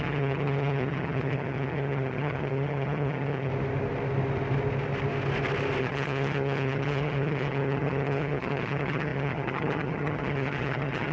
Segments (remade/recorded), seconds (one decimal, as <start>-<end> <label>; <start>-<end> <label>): 0.0-3.5 remade; 3.5-5.8 recorded; 5.8-11.1 remade